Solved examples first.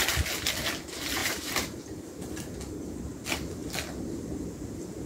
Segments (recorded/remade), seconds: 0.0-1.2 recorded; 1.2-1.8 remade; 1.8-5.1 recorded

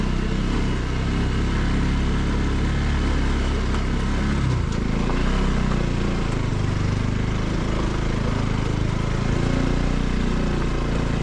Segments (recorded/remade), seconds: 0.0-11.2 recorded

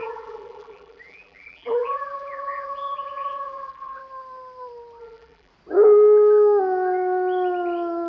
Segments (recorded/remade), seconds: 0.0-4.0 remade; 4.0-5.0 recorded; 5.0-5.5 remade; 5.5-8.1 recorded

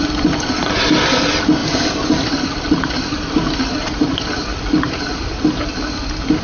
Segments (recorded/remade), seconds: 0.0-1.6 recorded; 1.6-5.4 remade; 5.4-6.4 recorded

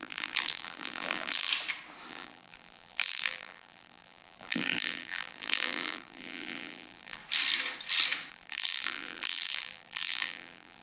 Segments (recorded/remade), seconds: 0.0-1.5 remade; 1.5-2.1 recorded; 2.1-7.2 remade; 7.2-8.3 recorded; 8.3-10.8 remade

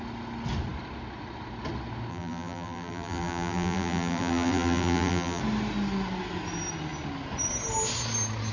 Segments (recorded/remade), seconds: 0.0-2.1 recorded; 2.1-5.4 remade; 5.4-8.5 recorded